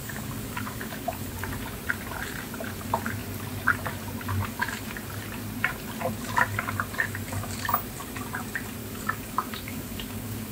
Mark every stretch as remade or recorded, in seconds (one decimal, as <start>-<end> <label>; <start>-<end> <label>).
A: 0.0-1.3 remade; 1.3-8.8 recorded; 8.8-10.5 remade